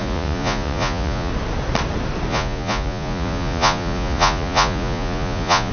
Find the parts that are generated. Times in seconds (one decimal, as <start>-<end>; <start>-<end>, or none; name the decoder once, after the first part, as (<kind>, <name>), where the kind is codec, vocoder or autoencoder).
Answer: 0.0-1.3 (vocoder, Vocos); 2.3-5.7